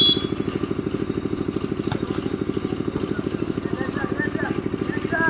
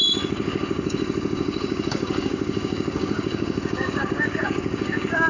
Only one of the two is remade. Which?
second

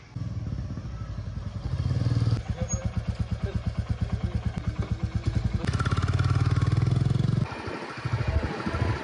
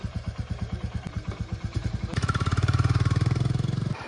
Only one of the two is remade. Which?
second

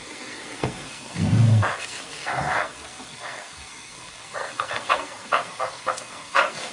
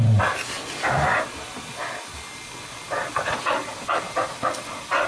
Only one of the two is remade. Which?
first